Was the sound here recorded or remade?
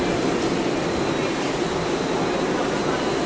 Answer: recorded